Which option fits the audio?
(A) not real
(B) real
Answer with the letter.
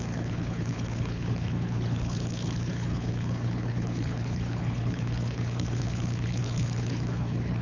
A